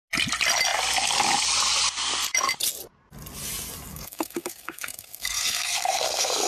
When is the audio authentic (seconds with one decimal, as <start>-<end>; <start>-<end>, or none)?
0.0-3.9